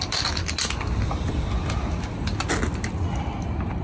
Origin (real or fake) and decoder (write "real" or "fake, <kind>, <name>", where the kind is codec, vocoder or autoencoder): real